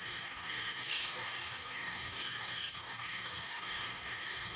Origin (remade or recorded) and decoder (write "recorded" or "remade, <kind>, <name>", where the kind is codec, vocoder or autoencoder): remade, codec, DAC